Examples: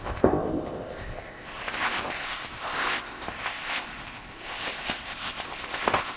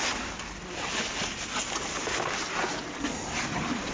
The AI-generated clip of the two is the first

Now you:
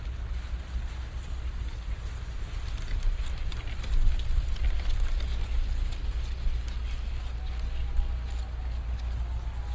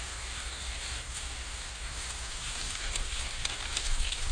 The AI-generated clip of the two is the second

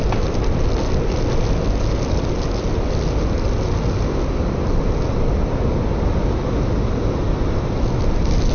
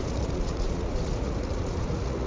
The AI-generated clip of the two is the second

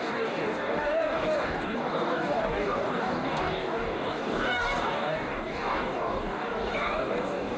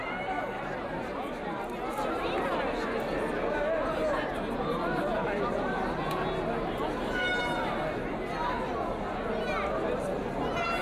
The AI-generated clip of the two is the first